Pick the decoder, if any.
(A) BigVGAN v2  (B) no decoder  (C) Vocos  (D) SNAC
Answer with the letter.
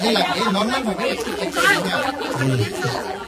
A